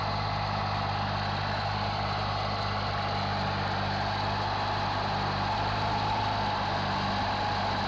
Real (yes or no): yes